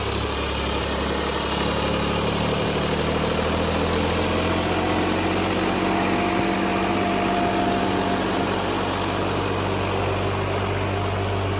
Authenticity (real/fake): real